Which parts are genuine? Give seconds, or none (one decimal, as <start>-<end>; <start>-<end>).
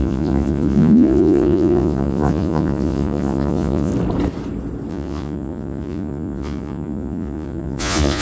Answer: 3.9-4.9